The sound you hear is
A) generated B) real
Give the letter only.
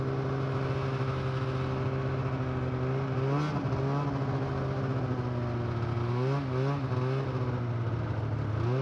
B